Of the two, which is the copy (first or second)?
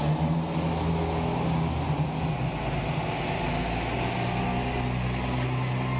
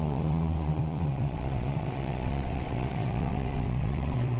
second